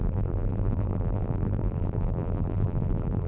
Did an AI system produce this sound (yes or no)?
yes